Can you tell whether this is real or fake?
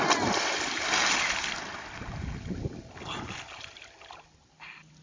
real